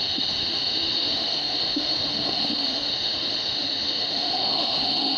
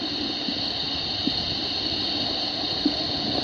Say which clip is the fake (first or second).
first